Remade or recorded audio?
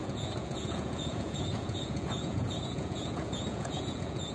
remade